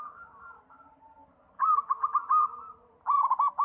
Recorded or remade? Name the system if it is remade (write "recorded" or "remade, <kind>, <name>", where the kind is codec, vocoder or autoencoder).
recorded